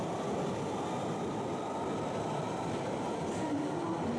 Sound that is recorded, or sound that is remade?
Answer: recorded